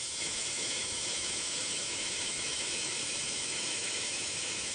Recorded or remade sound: remade